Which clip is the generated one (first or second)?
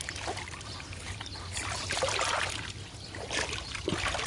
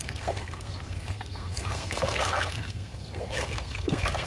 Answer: second